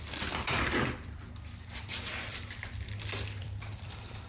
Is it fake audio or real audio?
fake